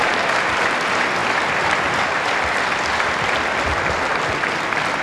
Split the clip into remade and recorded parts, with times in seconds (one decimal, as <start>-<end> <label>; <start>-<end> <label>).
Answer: 0.0-1.2 recorded; 1.2-4.2 remade; 4.2-5.0 recorded